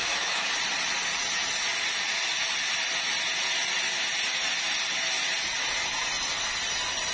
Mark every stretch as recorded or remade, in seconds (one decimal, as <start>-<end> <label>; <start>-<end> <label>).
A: 0.0-0.5 remade; 0.5-7.1 recorded